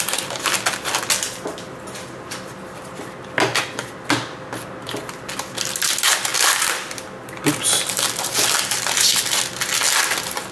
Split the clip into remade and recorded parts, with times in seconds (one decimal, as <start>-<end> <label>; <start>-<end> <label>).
0.0-10.5 recorded